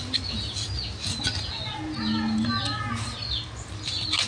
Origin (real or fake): real